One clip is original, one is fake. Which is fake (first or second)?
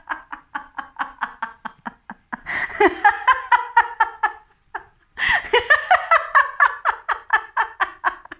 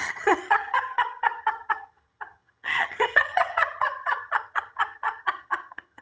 second